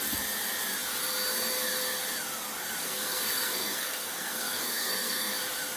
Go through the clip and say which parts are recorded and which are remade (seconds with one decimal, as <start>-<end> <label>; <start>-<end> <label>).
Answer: 0.0-2.8 recorded; 2.8-5.3 remade; 5.3-5.8 recorded